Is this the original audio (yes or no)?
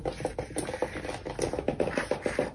yes